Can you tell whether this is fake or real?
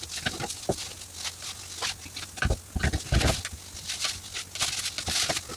real